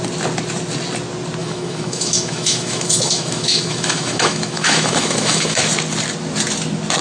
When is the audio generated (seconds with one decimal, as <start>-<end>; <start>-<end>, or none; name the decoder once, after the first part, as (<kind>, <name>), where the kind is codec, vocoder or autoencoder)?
1.4-5.6 (autoencoder, DAC-VAE)